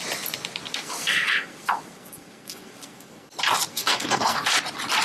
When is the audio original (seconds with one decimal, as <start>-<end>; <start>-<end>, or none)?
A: 0.0-0.7; 3.3-3.7; 4.5-5.0